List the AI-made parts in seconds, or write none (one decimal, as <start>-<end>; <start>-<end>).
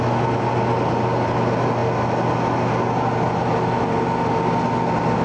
none